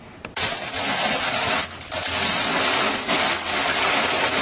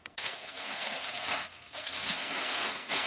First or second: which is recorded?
first